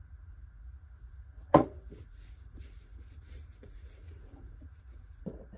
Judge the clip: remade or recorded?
remade